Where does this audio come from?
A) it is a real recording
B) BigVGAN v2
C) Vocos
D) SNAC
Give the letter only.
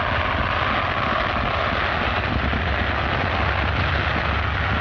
A